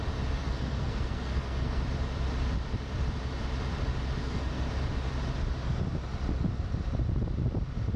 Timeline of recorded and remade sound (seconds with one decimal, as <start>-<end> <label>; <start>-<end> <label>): 0.0-0.4 recorded; 0.4-1.8 remade; 1.8-4.2 recorded; 4.2-4.7 remade; 4.7-8.0 recorded